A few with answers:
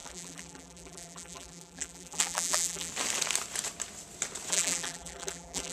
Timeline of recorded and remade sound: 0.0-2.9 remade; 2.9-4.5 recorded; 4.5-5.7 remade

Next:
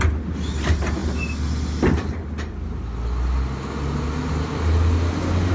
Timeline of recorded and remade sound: 0.0-5.5 recorded

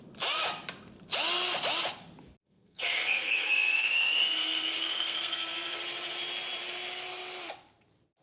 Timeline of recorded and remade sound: 0.0-2.4 recorded; 2.4-5.8 remade; 5.8-8.2 recorded

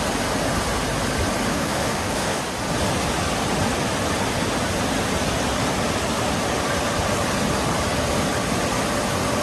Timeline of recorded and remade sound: 0.0-1.5 recorded; 1.5-2.4 remade; 2.4-9.4 recorded

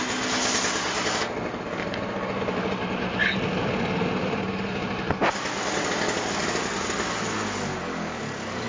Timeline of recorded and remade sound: 0.0-8.7 recorded

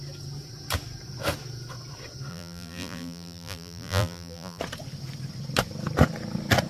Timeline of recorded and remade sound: 0.0-2.3 recorded; 2.3-4.6 remade; 4.6-6.7 recorded

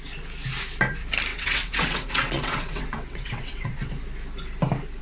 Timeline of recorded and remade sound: 0.0-1.3 recorded; 1.3-3.9 remade; 3.9-5.0 recorded

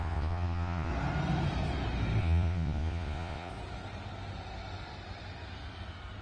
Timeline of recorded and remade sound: 0.0-0.9 remade; 0.9-2.2 recorded; 2.2-3.5 remade; 3.5-6.2 recorded